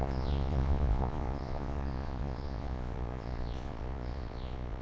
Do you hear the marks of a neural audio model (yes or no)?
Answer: yes